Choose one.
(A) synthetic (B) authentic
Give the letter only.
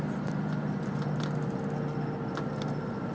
B